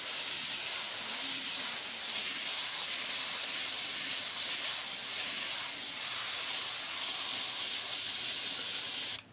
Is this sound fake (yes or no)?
no